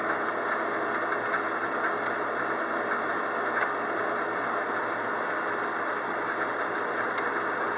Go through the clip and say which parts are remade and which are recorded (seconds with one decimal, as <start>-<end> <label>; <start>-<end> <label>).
0.0-7.8 recorded